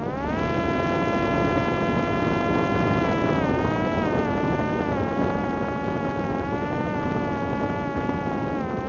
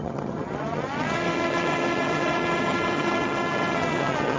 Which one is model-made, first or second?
second